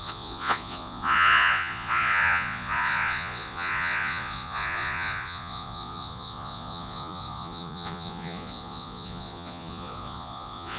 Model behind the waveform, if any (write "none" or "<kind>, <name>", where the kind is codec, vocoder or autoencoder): vocoder, Vocos